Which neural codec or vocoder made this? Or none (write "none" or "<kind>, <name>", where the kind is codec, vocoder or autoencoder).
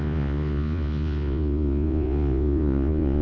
vocoder, Vocos